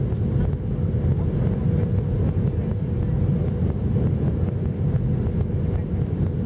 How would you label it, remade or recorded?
recorded